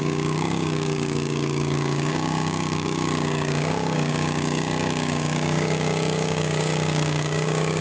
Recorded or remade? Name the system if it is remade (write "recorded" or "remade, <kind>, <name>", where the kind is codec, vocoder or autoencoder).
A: remade, codec, DAC